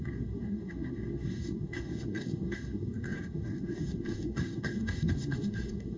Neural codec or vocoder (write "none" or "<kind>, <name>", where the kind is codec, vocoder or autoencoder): codec, SNAC